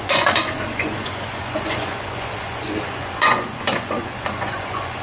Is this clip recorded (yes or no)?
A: no